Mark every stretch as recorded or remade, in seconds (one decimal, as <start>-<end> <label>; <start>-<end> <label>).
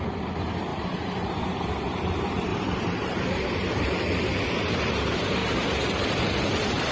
0.0-0.7 recorded; 0.7-1.5 remade; 1.5-2.5 recorded; 2.5-3.9 remade; 3.9-5.4 recorded; 5.4-6.1 remade; 6.1-6.9 recorded